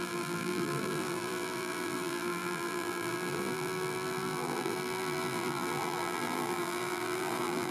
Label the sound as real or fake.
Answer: fake